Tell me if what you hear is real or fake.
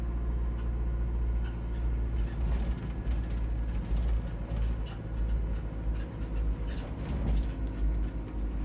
real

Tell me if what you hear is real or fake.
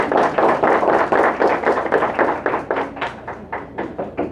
real